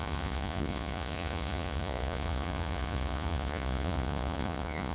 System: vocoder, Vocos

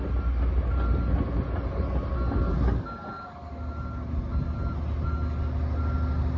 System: none